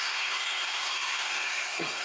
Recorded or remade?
remade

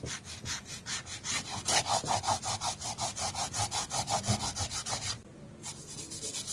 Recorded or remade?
recorded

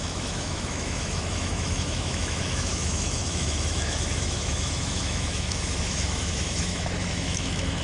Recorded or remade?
remade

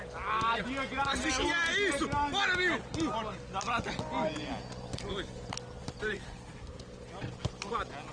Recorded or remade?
recorded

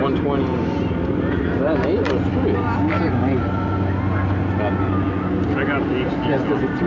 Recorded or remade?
recorded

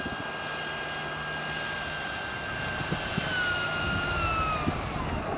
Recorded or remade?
recorded